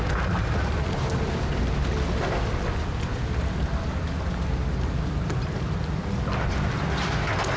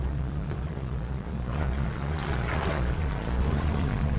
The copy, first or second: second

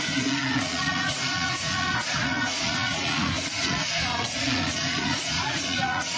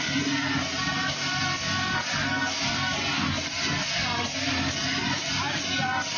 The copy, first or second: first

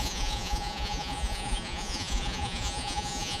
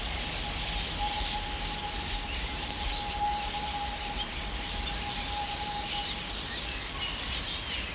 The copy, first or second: first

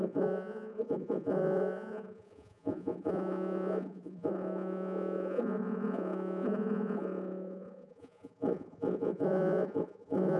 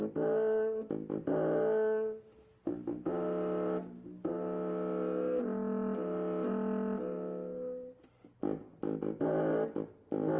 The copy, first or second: first